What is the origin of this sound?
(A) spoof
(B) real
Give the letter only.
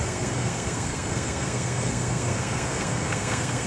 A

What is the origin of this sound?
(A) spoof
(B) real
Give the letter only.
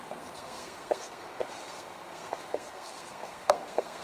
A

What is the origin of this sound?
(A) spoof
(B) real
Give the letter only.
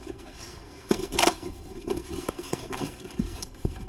A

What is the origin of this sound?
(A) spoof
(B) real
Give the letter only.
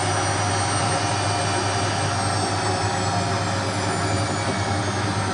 B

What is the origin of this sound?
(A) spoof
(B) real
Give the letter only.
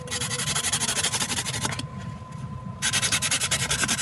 B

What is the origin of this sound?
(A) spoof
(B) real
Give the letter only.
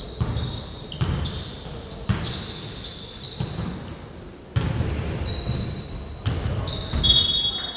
B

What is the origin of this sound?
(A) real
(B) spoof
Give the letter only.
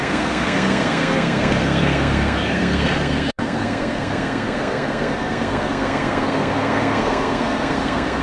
B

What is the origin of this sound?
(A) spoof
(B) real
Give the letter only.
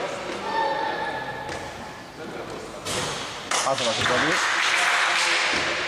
B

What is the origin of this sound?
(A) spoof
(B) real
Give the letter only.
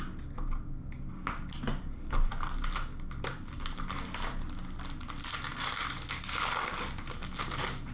B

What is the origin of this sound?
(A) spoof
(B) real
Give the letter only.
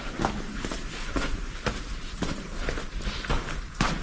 B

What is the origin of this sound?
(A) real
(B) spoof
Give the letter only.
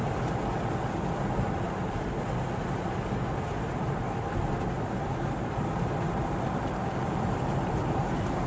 A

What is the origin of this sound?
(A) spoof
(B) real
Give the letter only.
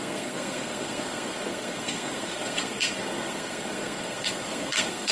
A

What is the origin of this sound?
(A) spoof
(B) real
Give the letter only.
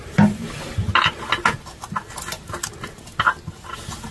B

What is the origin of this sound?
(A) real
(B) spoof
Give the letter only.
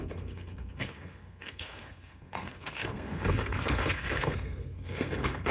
B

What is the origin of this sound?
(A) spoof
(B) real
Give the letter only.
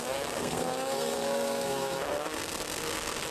A